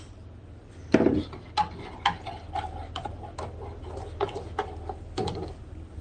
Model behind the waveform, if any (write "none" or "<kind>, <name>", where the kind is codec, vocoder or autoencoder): none